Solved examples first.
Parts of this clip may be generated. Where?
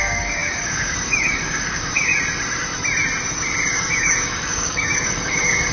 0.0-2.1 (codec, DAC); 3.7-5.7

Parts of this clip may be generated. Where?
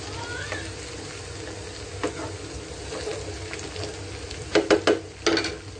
none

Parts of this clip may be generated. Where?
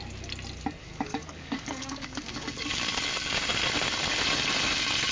0.8-2.8 (codec, DAC)